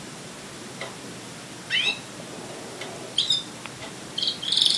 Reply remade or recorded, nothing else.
recorded